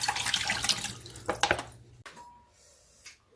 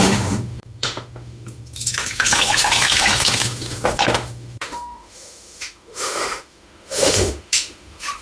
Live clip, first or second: first